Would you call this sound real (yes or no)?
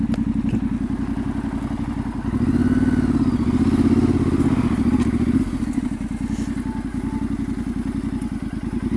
yes